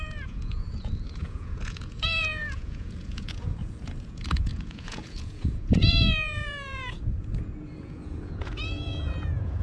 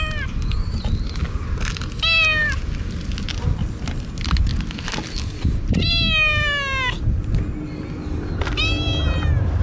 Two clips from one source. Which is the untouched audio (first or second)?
second